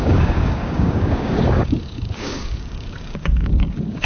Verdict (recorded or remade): remade